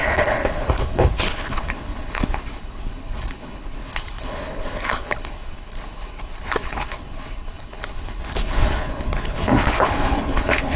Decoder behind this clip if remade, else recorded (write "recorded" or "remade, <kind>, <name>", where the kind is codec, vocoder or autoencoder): remade, codec, HILCodec